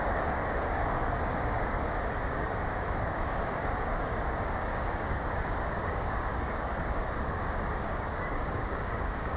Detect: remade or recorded remade